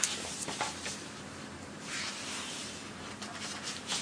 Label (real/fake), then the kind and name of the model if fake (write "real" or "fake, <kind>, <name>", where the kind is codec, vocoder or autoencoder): fake, vocoder, BigVGAN v2